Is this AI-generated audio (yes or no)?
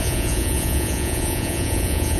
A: yes